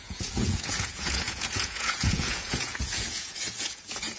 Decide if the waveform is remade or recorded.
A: remade